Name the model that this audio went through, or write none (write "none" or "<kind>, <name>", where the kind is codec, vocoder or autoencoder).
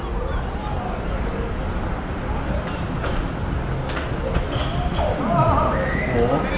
none